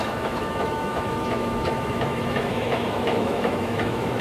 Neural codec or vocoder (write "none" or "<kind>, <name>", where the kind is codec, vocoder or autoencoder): autoencoder, DAC-VAE